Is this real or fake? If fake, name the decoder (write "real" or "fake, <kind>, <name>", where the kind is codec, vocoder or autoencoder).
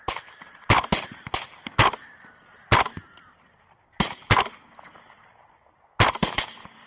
real